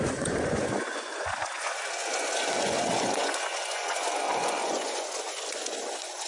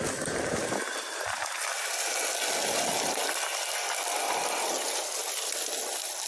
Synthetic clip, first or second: first